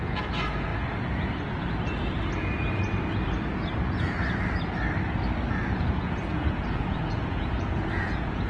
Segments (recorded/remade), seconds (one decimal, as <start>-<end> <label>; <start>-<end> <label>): 0.0-0.7 remade; 0.7-5.5 recorded; 5.5-8.5 remade